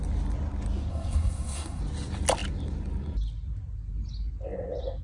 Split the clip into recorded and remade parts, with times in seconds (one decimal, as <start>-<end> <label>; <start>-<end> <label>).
0.0-0.9 recorded; 0.9-1.8 remade; 1.8-5.0 recorded